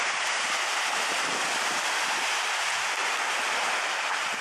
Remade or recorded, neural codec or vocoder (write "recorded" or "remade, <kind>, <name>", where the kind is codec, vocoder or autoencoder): recorded